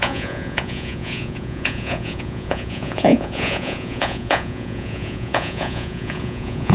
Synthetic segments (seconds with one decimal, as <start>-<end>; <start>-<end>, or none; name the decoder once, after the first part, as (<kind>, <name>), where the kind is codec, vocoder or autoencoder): 0.0-6.7 (vocoder, Vocos)